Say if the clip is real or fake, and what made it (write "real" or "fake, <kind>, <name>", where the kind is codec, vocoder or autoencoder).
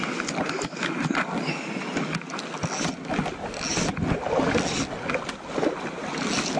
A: real